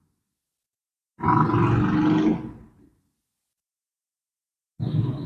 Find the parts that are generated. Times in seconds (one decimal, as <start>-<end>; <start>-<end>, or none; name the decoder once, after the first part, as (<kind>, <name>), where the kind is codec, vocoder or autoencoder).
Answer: none